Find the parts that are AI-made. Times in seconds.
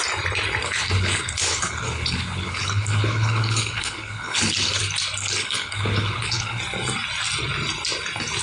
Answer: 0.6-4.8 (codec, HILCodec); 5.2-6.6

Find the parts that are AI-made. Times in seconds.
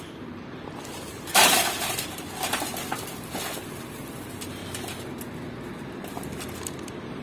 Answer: 0.0-4.6 (vocoder, BigVGAN v2); 6.4-7.2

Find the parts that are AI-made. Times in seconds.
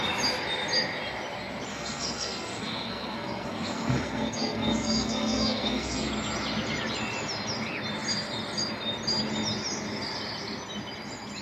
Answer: 1.7-6.1 (codec, SNAC)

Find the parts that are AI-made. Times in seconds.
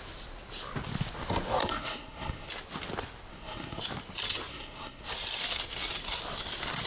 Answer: 1.6-2.5 (codec, SNAC); 3.3-3.8; 4.5-5.1